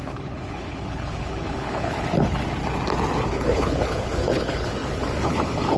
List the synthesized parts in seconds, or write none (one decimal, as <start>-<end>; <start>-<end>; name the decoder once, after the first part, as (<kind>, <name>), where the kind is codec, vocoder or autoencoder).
0.0-2.4 (codec, HILCodec); 3.3-5.8